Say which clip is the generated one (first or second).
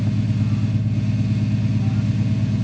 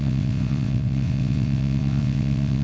second